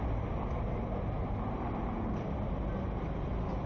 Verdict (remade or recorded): recorded